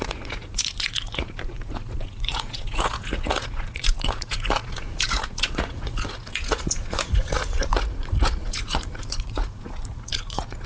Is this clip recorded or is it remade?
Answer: remade